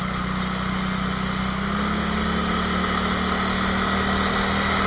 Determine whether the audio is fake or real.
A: real